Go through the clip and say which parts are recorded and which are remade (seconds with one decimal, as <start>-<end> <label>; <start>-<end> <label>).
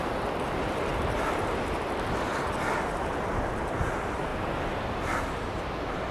0.0-6.1 recorded